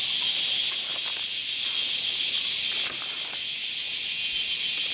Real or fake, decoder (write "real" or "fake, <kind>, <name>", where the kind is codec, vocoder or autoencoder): real